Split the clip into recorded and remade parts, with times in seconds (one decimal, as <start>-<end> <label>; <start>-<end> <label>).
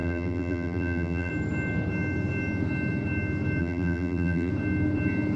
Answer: 0.0-1.3 remade; 1.3-3.6 recorded; 3.6-4.5 remade; 4.5-5.4 recorded